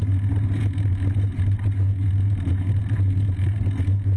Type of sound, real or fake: real